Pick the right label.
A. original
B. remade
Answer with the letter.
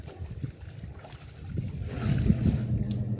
A